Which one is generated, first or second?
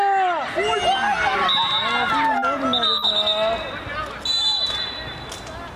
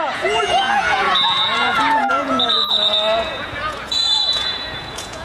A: second